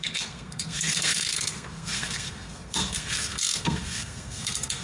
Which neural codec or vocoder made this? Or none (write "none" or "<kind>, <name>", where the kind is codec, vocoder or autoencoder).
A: codec, SNAC